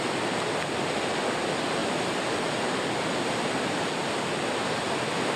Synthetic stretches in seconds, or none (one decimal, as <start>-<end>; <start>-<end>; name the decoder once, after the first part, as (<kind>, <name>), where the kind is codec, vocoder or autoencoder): none

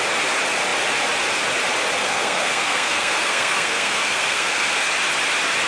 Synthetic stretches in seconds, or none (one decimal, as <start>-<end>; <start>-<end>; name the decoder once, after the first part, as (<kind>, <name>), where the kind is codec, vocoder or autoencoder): 2.0-4.9 (codec, SNAC)

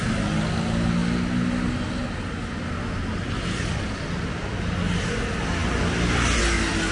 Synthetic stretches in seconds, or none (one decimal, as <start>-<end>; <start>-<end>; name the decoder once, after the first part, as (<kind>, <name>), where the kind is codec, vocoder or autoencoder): none

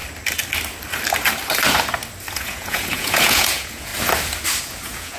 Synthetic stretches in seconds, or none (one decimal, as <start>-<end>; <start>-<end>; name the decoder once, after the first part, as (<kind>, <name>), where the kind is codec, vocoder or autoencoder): 2.3-3.9 (vocoder, Vocos); 4.6-5.2

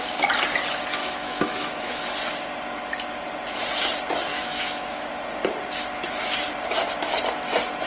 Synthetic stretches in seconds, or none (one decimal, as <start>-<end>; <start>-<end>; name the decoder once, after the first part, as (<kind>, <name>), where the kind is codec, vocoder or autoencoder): 1.0-2.1 (autoencoder, DAC-VAE); 4.3-5.1